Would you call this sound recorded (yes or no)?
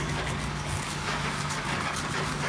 no